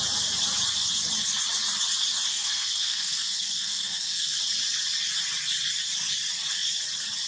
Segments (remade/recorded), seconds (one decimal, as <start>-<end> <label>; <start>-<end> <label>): 0.0-2.3 recorded; 2.3-4.4 remade; 4.4-7.3 recorded